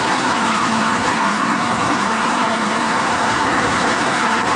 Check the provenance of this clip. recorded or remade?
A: remade